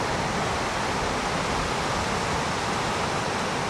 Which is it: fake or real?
real